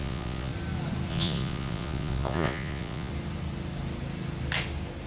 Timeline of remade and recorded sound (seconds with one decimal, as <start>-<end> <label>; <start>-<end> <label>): 0.0-0.5 remade; 0.5-1.1 recorded; 1.1-3.1 remade; 3.1-5.1 recorded